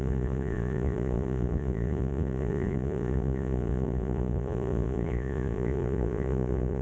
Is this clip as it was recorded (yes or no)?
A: no